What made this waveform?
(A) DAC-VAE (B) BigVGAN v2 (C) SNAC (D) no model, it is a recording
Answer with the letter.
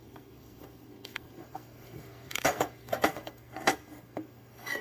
C